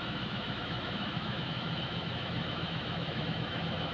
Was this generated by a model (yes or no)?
yes